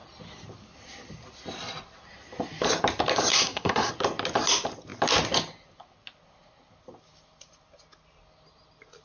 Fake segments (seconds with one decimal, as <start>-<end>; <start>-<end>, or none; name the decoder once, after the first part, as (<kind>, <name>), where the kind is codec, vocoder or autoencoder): 3.3-3.9 (codec, SNAC)